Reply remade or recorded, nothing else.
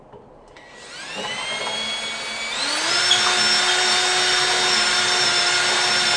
recorded